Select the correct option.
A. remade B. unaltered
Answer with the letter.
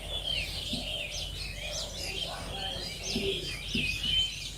B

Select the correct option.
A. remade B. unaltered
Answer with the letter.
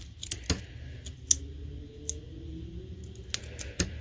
B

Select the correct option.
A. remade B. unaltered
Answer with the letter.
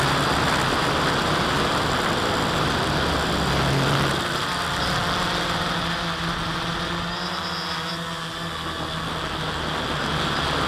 B